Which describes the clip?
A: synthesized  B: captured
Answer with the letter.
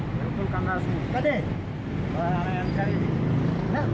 B